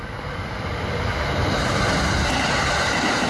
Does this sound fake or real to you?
real